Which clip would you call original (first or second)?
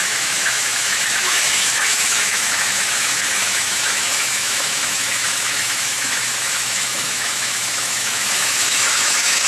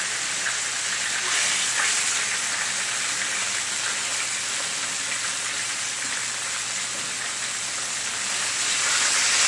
second